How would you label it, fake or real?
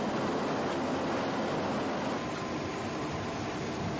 real